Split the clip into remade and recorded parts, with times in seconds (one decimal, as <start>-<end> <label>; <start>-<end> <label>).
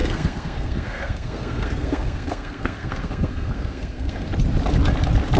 0.0-4.3 remade; 4.3-5.4 recorded